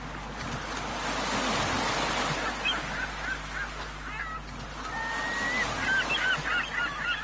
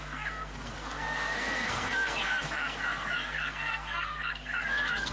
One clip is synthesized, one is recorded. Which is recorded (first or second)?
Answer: first